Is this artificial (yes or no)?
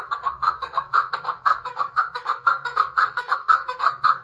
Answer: yes